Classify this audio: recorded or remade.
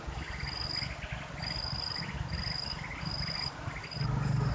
recorded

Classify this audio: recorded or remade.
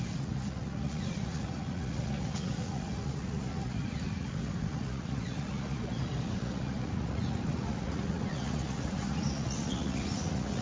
remade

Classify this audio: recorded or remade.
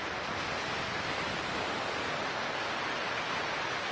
recorded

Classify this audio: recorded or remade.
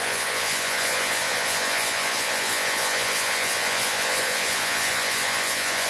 remade